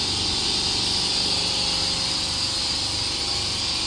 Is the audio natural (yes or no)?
yes